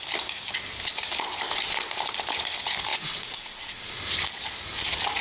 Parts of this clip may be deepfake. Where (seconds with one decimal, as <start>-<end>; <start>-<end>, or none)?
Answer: 2.9-4.0